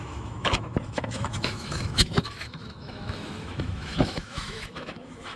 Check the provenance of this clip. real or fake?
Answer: fake